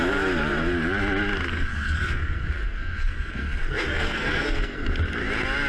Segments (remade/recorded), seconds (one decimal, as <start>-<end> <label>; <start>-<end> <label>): 0.0-1.5 recorded; 1.5-4.9 remade; 4.9-5.7 recorded